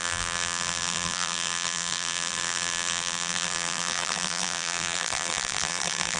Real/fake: fake